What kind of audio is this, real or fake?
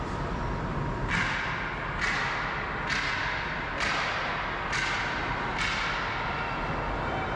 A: real